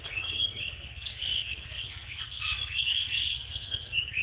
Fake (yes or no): yes